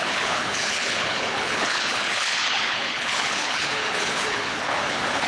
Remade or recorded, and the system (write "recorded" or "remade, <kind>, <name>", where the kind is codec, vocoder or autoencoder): remade, codec, HILCodec